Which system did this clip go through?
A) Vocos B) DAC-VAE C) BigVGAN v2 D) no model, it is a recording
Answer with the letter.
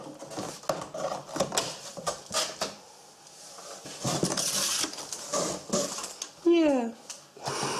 D